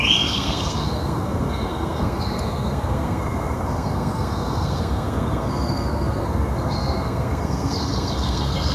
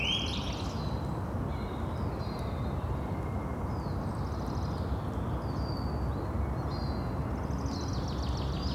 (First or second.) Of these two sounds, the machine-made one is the first